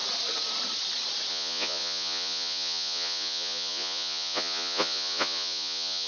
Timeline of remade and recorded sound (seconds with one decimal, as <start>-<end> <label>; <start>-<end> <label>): 0.0-1.3 recorded; 1.3-6.1 remade